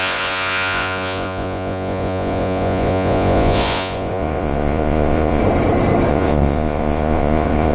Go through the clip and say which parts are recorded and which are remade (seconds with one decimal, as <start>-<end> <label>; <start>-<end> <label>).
0.0-5.4 remade; 5.4-6.1 recorded; 6.1-7.7 remade